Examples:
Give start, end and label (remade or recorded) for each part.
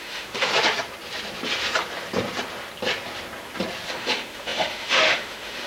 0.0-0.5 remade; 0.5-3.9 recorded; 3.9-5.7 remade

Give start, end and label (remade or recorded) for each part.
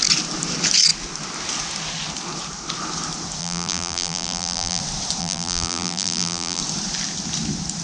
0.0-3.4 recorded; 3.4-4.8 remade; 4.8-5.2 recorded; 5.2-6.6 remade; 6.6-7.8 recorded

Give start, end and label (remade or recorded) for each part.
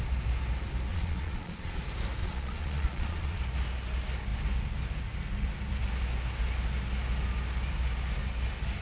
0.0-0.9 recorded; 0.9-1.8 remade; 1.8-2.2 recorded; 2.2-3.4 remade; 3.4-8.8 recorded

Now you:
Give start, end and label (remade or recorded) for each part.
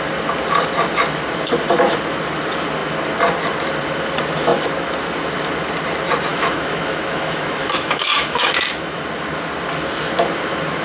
0.0-6.3 recorded; 6.3-9.0 remade; 9.0-10.8 recorded